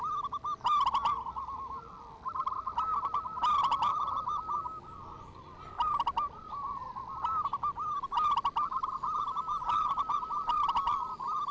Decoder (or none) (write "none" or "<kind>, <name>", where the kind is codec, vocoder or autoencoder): none